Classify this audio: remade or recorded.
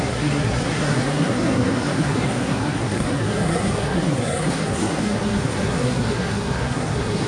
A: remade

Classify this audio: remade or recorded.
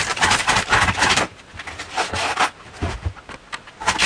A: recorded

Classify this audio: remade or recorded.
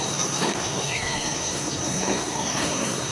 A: remade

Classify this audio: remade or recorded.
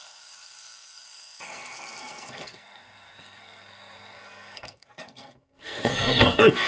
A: remade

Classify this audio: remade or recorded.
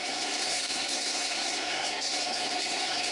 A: remade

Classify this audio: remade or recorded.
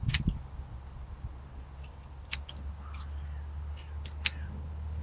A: recorded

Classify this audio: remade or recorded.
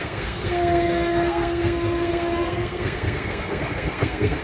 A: remade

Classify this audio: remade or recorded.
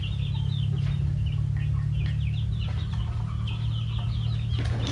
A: recorded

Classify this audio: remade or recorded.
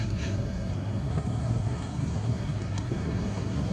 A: remade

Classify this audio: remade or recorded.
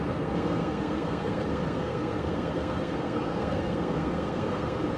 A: remade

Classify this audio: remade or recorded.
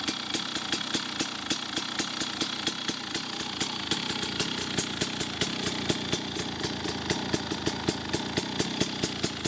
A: recorded